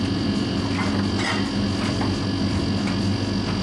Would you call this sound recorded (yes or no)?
yes